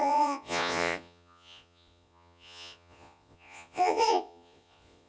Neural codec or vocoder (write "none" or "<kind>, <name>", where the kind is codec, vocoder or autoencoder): vocoder, Vocos